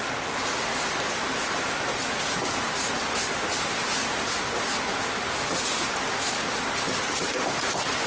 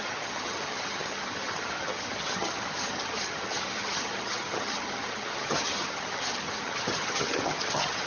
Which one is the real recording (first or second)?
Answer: first